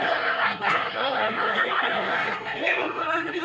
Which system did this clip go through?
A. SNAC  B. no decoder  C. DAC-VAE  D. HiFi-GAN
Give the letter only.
A